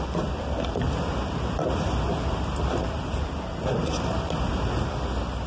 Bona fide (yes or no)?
yes